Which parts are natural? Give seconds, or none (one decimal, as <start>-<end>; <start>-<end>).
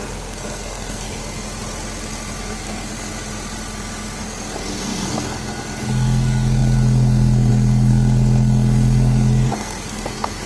1.2-2.4; 3.1-4.2